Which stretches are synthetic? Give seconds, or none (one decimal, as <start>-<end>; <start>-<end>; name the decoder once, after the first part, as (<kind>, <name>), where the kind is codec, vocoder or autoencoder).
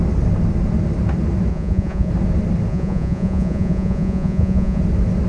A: 1.5-2.1 (vocoder, Vocos); 2.7-4.8